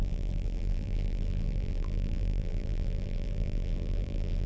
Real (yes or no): no